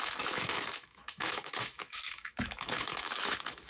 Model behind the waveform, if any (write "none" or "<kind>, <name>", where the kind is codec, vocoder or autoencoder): autoencoder, DAC-VAE